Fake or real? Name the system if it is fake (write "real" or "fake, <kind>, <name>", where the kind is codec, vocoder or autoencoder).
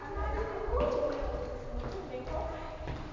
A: real